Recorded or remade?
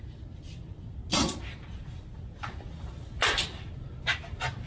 recorded